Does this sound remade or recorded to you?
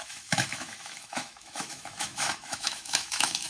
remade